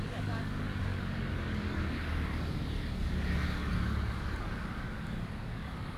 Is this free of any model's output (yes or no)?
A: no